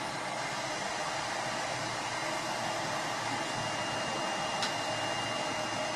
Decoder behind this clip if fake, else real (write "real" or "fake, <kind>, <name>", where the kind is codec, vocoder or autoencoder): real